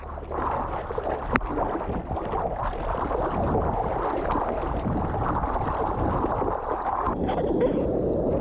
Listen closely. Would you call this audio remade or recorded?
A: recorded